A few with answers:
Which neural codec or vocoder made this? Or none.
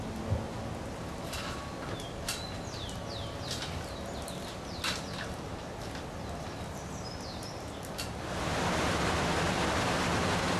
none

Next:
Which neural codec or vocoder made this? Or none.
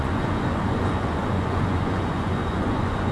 vocoder, Vocos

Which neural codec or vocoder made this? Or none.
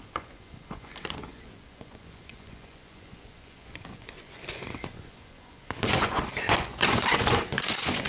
vocoder, Vocos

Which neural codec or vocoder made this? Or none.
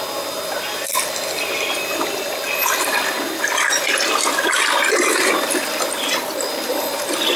none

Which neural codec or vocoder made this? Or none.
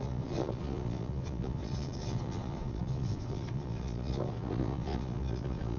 vocoder, Vocos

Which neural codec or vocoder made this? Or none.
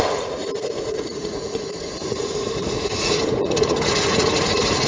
vocoder, Vocos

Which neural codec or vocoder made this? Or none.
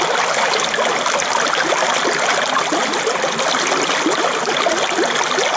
none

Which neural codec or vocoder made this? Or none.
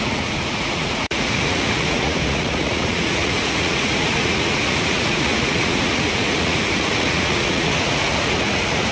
vocoder, Vocos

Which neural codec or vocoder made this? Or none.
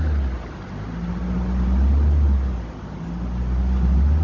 none